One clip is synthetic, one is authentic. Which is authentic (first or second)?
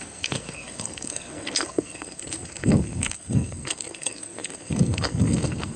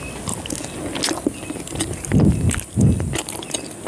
second